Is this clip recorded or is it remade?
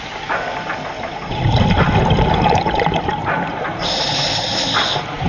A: recorded